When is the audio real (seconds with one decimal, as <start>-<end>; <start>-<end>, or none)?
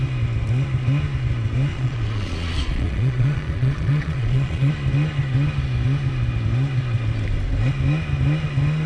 0.0-1.7; 4.7-8.9